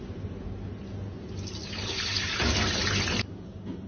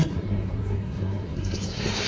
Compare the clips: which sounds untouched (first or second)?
first